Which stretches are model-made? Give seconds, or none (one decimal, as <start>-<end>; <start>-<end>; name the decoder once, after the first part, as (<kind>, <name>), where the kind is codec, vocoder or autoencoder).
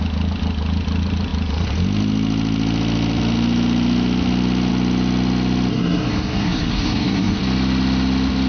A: 5.7-7.4 (codec, SNAC)